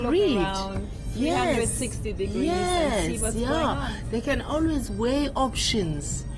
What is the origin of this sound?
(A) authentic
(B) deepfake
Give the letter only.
A